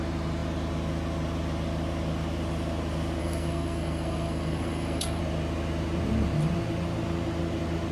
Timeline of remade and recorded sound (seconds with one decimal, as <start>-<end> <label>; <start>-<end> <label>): 0.0-3.2 recorded; 3.2-5.2 remade; 5.2-7.9 recorded

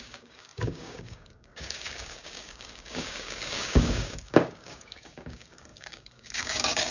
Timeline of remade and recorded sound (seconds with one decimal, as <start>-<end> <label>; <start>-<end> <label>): 0.0-6.9 remade

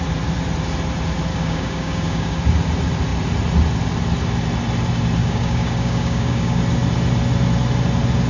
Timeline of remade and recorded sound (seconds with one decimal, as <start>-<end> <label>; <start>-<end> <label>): 0.0-1.3 recorded; 1.3-2.4 remade; 2.4-5.2 recorded; 5.2-6.6 remade; 6.6-8.3 recorded

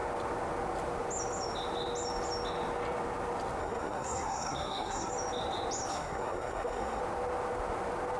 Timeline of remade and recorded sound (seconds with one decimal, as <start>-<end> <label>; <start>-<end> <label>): 0.0-3.6 recorded; 3.6-5.1 remade; 5.1-5.9 recorded; 5.9-7.0 remade; 7.0-8.2 recorded

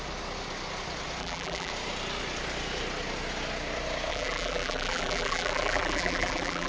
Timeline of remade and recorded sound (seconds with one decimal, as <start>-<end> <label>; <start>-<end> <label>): 0.0-1.2 recorded; 1.2-1.7 remade; 1.7-4.1 recorded; 4.1-6.7 remade